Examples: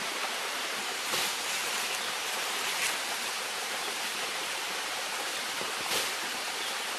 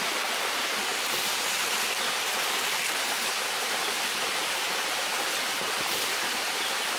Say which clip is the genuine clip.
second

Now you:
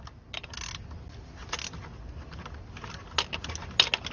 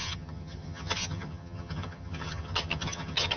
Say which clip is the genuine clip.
first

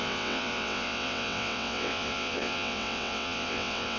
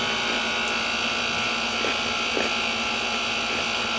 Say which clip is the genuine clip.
second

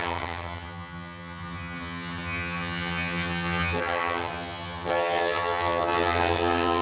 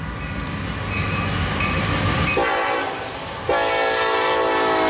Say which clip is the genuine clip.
second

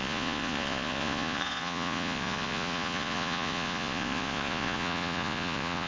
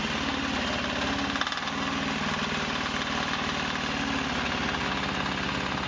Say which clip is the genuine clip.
second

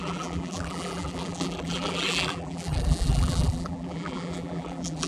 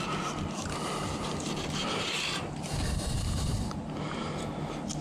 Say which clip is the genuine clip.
second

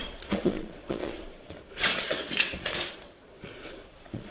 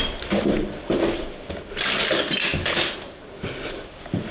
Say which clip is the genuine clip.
second